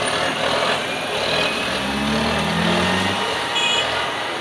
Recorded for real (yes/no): yes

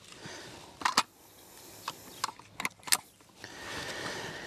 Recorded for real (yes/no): yes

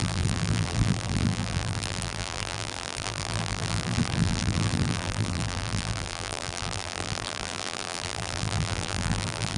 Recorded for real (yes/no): no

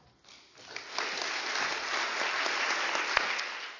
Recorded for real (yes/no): yes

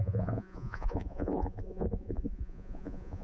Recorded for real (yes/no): no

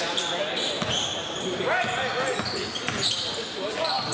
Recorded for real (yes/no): yes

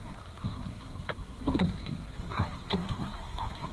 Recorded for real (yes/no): no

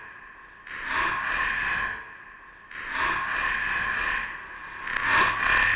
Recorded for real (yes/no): yes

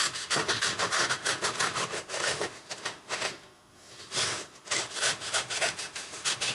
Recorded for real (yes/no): no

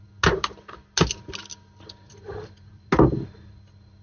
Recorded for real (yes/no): yes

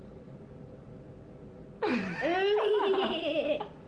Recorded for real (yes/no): yes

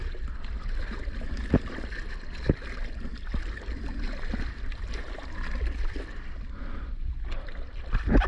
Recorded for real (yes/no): no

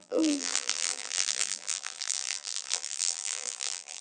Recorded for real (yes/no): no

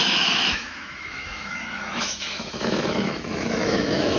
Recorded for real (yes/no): no